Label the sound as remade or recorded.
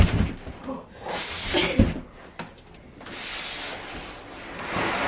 recorded